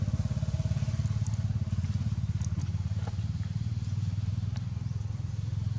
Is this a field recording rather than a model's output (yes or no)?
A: yes